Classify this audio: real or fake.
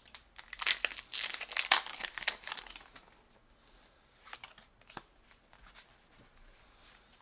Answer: real